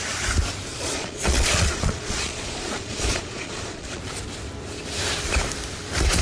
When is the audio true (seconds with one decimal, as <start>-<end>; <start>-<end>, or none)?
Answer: 0.0-0.7; 4.0-6.2